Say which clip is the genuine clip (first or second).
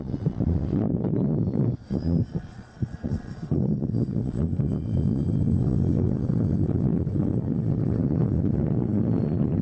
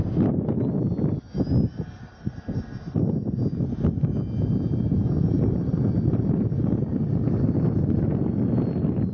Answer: second